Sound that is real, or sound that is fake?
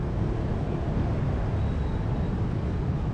real